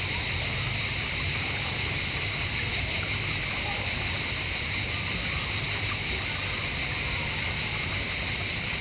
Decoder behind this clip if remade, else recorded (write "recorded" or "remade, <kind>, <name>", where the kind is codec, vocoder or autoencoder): recorded